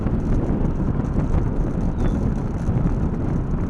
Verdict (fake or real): real